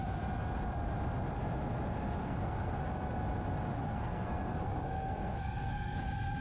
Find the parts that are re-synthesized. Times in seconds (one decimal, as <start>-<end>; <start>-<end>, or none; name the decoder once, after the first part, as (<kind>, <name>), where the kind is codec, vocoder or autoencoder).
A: 2.2-2.8 (codec, SNAC); 3.7-6.0